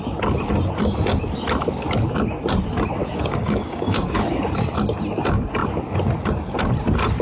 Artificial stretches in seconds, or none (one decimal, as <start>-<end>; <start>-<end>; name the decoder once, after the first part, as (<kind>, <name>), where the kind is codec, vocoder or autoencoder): 3.0-4.4 (codec, DAC)